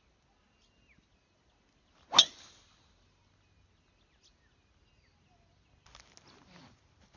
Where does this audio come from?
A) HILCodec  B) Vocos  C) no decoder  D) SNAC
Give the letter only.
C